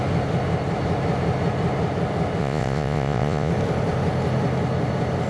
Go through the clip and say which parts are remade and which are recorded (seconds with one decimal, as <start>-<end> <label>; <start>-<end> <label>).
0.0-2.4 recorded; 2.4-3.5 remade; 3.5-5.3 recorded

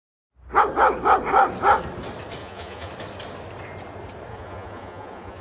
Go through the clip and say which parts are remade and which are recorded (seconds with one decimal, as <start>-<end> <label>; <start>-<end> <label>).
0.0-2.4 recorded; 2.4-2.9 remade; 2.9-4.3 recorded; 4.3-5.4 remade

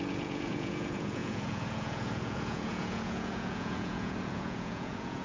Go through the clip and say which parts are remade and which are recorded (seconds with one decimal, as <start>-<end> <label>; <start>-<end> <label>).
0.0-5.2 remade